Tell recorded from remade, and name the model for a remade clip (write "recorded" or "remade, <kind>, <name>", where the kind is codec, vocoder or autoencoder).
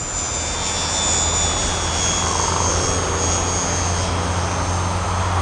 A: recorded